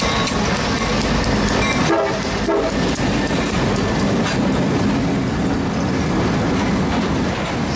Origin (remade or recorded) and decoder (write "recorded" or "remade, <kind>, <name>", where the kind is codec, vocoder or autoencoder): recorded